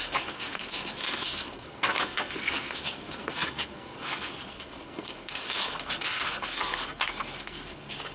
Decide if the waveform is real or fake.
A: fake